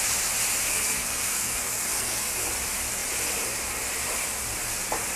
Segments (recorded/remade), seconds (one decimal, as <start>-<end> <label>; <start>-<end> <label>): 0.0-0.7 recorded; 0.7-2.3 remade; 2.3-5.2 recorded